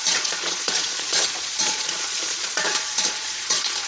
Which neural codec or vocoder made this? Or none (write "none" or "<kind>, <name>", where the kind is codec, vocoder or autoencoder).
vocoder, Vocos